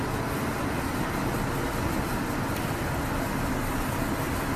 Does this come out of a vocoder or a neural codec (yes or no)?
no